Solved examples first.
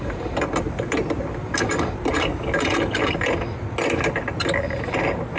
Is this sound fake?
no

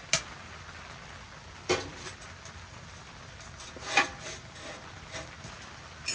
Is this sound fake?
no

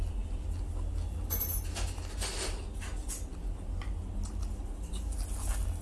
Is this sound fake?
no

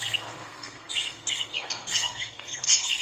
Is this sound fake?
yes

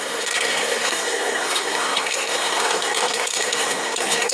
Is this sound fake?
yes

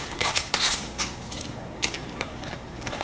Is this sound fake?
yes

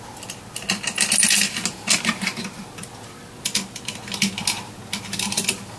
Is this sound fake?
no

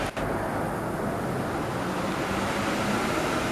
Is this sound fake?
no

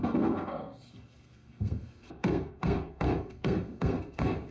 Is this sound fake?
yes